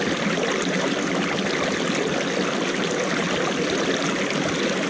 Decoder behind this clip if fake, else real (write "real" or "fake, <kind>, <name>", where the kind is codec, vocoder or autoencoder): real